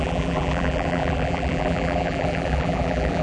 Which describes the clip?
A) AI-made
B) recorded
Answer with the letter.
A